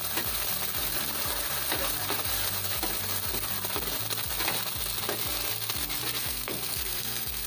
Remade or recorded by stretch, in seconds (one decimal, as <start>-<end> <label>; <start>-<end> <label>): 0.0-6.2 recorded; 6.2-7.5 remade